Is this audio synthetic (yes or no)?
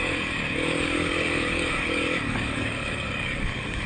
yes